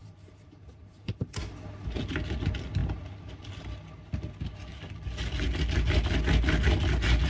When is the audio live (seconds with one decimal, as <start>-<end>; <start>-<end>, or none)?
1.4-7.3